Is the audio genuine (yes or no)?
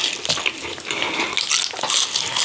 yes